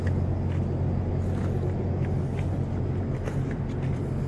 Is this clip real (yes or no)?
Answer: yes